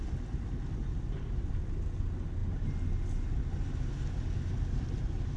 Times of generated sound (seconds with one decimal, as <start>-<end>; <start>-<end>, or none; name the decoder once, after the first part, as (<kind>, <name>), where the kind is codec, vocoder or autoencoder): none